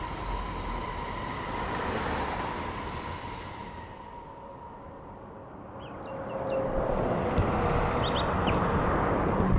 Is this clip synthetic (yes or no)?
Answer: no